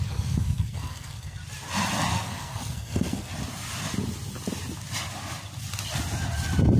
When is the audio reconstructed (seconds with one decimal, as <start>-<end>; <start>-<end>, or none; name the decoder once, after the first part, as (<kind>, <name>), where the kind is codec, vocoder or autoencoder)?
0.0-1.4 (codec, SNAC); 2.1-3.3